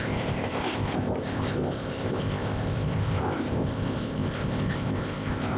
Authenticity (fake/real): fake